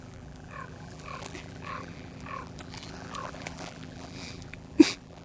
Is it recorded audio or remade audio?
remade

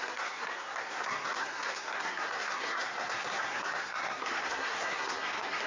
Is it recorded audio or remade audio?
remade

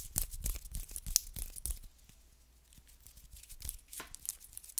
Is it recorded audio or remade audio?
recorded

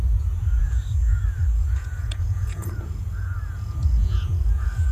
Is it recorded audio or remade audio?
remade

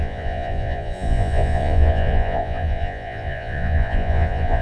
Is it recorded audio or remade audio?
remade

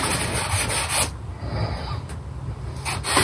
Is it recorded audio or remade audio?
recorded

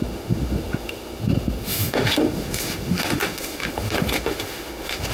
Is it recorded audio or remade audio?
remade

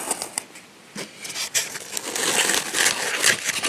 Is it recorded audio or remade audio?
recorded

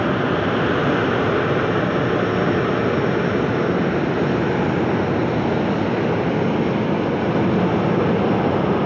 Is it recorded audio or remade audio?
recorded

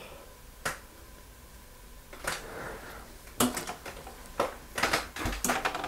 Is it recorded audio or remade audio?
recorded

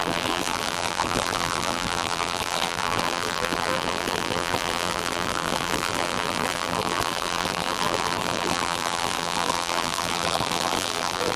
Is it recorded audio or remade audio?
remade